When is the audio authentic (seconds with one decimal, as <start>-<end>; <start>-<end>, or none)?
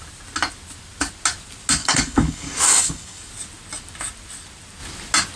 0.0-1.8; 3.3-5.4